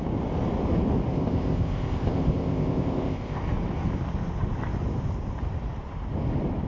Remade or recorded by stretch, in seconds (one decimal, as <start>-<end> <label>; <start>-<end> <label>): 0.0-1.1 recorded; 1.1-3.4 remade; 3.4-6.7 recorded